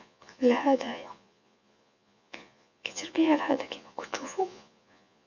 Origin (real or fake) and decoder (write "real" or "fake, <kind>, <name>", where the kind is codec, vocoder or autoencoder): fake, vocoder, Vocos